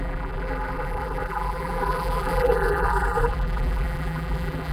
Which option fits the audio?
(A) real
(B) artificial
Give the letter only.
B